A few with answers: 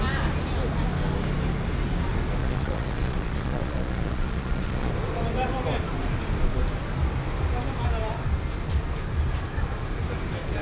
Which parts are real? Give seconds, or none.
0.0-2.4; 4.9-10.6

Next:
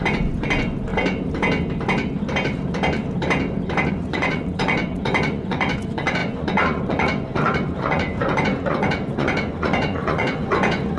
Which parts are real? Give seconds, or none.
0.9-3.9